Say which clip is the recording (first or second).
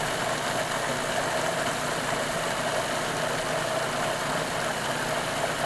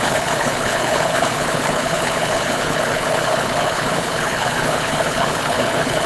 first